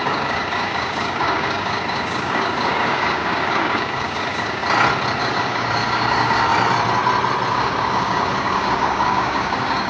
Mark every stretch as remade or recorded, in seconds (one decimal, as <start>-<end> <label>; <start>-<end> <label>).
0.0-4.6 remade; 4.6-5.2 recorded; 5.2-6.5 remade; 6.5-7.5 recorded; 7.5-9.9 remade

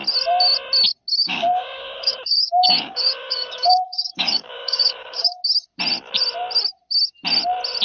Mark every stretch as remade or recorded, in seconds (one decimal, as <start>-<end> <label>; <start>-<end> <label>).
0.0-1.2 recorded; 1.2-5.4 remade; 5.4-7.8 recorded

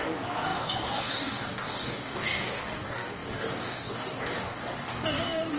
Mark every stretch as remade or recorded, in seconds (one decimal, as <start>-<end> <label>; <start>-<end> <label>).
0.0-5.6 remade

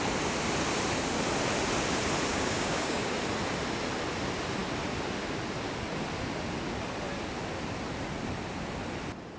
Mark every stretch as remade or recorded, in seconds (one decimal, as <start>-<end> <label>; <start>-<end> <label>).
0.0-2.3 recorded; 2.3-3.2 remade; 3.2-9.4 recorded

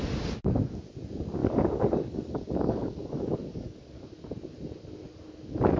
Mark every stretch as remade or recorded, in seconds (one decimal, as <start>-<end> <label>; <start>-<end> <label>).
0.0-1.4 recorded; 1.4-4.0 remade; 4.0-5.8 recorded

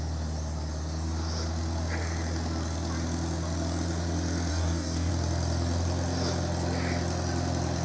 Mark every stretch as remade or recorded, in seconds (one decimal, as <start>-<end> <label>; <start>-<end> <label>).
0.0-4.5 recorded; 4.5-5.1 remade; 5.1-7.8 recorded

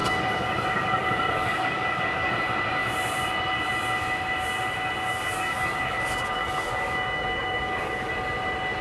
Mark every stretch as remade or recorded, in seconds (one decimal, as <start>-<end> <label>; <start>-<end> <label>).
0.0-2.3 remade; 2.3-5.1 recorded; 5.1-8.1 remade; 8.1-8.8 recorded